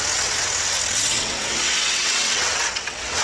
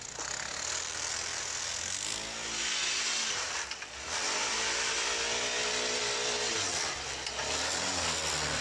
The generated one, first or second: first